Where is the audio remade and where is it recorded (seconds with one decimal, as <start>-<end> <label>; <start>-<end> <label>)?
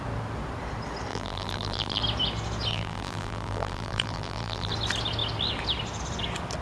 0.0-1.1 recorded; 1.1-2.0 remade; 2.0-2.7 recorded; 2.7-4.7 remade; 4.7-6.6 recorded